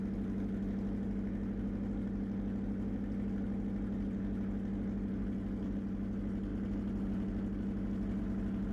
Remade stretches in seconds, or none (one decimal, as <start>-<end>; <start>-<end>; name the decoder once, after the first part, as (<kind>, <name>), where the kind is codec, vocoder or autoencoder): none